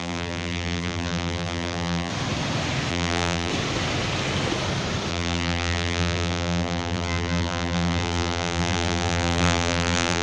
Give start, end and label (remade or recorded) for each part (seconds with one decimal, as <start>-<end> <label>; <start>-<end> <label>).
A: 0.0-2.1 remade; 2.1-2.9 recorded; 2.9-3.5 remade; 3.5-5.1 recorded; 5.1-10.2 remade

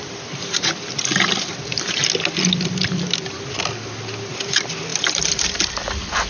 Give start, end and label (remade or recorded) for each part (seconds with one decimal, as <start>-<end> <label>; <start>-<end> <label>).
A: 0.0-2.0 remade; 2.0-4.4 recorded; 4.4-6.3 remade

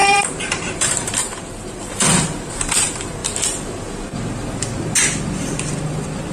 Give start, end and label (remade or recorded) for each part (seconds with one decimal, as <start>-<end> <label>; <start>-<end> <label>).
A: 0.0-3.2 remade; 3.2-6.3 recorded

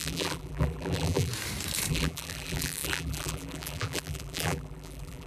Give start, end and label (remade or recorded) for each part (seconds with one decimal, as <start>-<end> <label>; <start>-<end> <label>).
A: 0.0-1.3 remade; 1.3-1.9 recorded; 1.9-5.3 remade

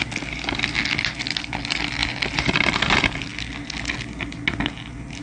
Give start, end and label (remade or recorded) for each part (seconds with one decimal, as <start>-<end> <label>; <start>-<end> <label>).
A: 0.0-5.2 recorded